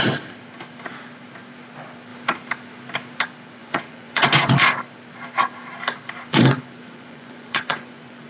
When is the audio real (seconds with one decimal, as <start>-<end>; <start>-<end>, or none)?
0.0-3.6; 4.5-6.3